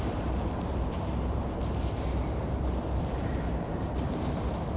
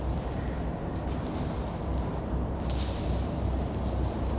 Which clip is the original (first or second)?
second